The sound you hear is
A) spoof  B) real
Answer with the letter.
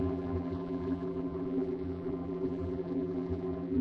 A